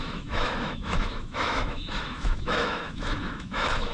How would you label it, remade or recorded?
remade